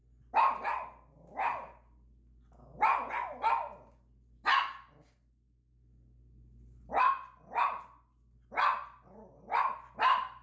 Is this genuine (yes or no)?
yes